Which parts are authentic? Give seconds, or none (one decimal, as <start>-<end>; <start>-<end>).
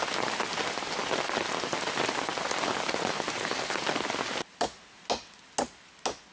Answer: 0.0-6.3